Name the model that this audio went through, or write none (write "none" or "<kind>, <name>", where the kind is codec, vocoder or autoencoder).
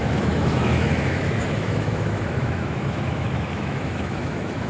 autoencoder, DAC-VAE